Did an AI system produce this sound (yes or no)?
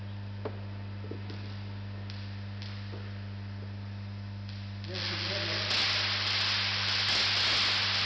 no